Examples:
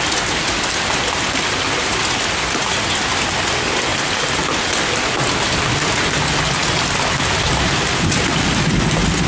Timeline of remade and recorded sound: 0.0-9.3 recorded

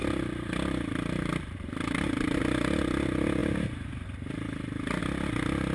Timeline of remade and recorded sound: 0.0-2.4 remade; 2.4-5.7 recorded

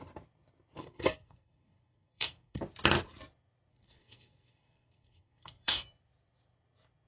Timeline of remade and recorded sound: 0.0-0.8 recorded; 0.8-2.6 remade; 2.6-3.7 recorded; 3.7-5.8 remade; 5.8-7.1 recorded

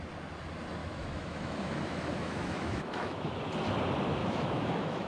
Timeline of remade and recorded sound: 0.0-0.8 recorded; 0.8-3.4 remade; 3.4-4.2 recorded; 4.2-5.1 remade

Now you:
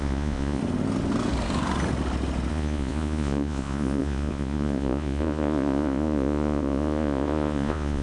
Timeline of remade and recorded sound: 0.0-0.6 remade; 0.6-2.5 recorded; 2.5-8.0 remade

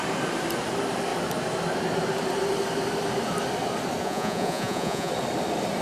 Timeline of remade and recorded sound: 0.0-4.0 recorded; 4.0-5.1 remade; 5.1-5.8 recorded